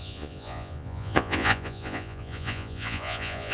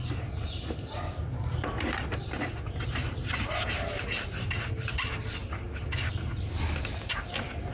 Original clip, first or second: second